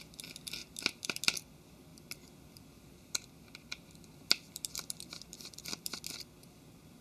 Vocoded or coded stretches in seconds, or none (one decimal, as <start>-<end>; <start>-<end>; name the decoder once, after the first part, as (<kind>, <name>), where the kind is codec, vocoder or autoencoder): 0.6-1.2 (vocoder, BigVGAN v2); 1.9-6.0